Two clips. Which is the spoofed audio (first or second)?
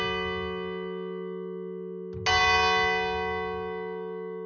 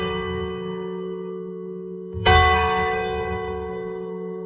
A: second